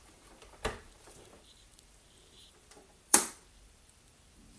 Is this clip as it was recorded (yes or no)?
no